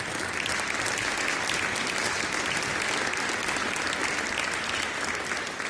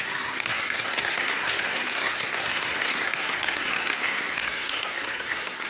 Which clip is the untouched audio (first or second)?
first